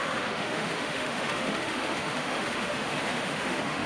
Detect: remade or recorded remade